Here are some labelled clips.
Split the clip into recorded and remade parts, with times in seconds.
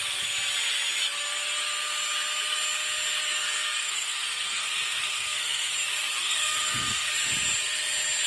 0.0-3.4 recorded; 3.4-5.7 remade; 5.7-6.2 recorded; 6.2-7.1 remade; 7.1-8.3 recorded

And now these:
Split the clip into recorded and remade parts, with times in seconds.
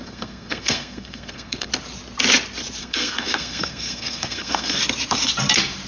0.0-1.7 remade; 1.7-2.8 recorded; 2.8-4.8 remade; 4.8-5.9 recorded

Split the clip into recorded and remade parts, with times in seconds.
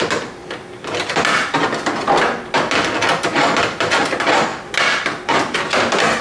0.0-6.2 recorded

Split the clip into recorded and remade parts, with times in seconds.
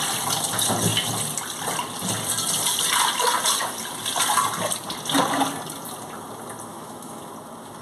0.0-6.7 recorded; 6.7-7.3 remade; 7.3-7.8 recorded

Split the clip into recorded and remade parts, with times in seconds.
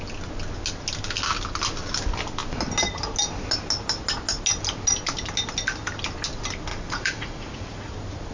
0.0-6.7 recorded; 6.7-7.9 remade; 7.9-8.3 recorded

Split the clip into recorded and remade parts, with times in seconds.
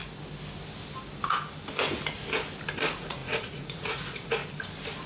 0.0-2.8 recorded; 2.8-4.4 remade; 4.4-5.1 recorded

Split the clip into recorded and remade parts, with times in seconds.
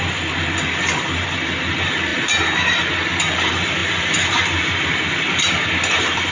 0.0-3.8 recorded; 3.8-4.7 remade; 4.7-6.3 recorded